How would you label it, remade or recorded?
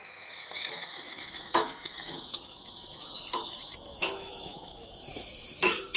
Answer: remade